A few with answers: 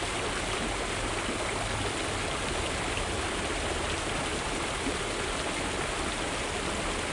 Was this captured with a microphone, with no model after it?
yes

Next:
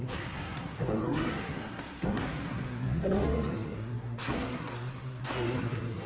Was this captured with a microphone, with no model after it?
no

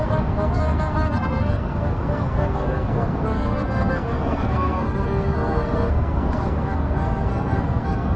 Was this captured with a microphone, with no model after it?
no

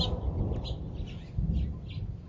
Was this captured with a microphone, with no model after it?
yes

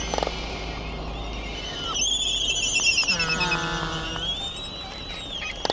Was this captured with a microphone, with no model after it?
yes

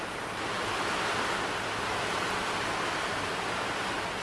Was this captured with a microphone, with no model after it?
yes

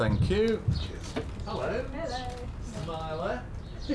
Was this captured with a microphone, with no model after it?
yes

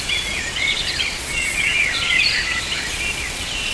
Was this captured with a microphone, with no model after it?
no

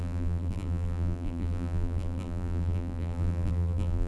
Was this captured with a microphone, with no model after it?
no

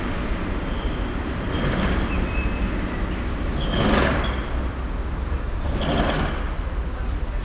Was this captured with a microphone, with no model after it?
yes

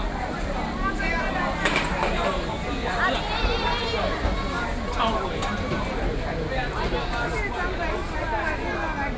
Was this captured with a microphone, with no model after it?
yes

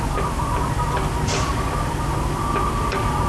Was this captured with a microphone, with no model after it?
yes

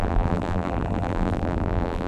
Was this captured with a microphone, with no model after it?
no